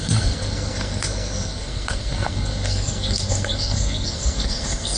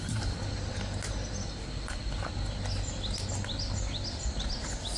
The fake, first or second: first